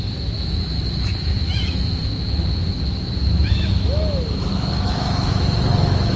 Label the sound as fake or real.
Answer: fake